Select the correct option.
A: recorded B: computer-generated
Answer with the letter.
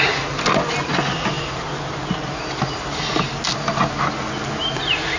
A